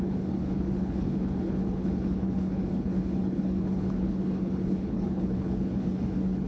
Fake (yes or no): yes